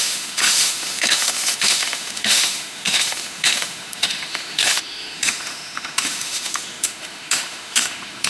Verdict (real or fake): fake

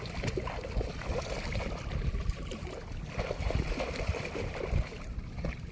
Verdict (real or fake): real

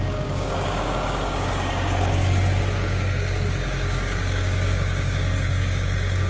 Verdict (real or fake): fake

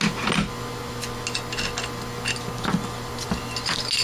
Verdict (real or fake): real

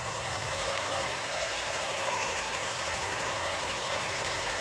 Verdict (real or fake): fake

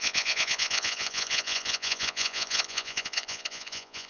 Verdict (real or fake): fake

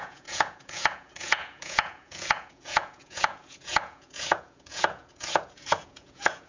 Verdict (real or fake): fake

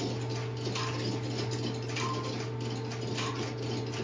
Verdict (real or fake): real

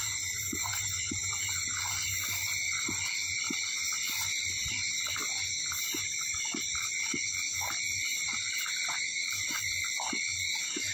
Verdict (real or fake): real